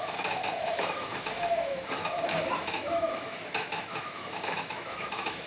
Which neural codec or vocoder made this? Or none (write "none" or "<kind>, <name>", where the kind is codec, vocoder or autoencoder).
autoencoder, DAC-VAE